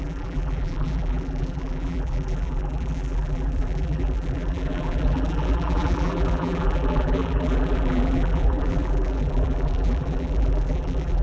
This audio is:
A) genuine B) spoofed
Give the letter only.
B